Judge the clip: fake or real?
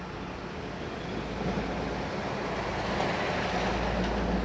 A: real